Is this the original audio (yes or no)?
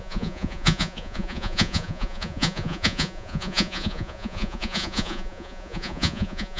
no